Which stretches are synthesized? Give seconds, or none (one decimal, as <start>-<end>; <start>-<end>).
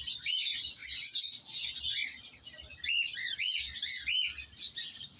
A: none